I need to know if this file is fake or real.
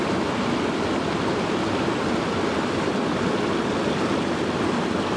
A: real